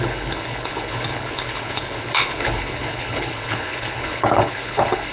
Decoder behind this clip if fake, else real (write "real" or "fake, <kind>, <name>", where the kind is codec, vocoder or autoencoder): fake, codec, HILCodec